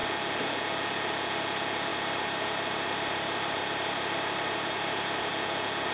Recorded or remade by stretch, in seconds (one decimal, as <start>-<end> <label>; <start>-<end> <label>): 0.0-1.9 recorded; 1.9-5.3 remade; 5.3-5.9 recorded